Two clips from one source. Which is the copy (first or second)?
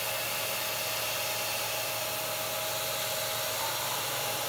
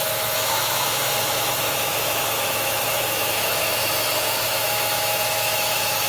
second